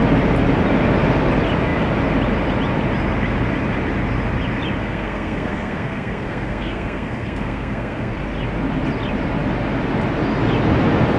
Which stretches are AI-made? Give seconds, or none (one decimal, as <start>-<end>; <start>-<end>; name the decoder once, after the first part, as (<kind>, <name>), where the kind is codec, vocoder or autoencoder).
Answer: 4.8-8.1 (codec, SNAC)